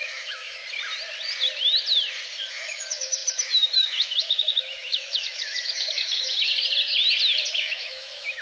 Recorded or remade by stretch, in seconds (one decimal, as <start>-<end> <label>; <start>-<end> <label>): 0.0-0.6 remade; 0.6-2.5 recorded; 2.5-6.5 remade; 6.5-7.5 recorded; 7.5-8.4 remade